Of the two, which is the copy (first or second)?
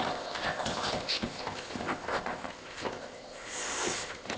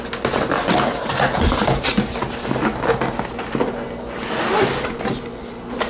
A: first